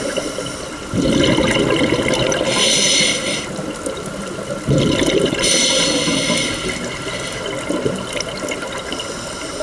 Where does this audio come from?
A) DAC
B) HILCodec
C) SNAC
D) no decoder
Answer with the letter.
D